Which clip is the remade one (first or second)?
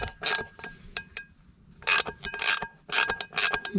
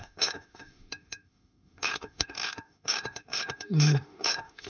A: second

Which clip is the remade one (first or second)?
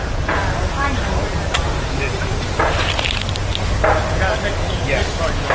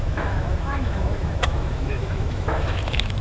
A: second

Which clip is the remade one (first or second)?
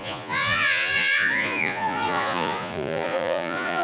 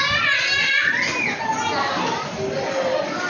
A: first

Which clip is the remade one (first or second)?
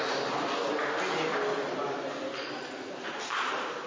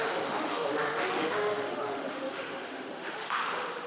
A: second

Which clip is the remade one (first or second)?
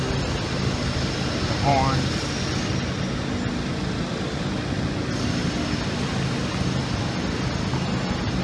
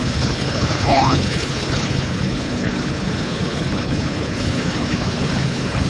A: second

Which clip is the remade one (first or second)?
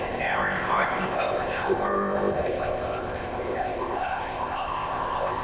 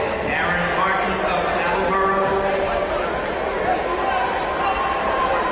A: first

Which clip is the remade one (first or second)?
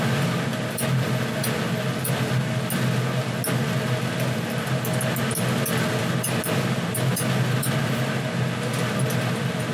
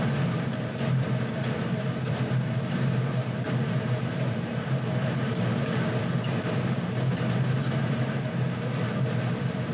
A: second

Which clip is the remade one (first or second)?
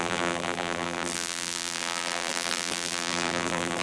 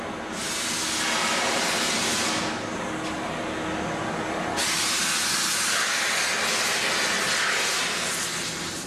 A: first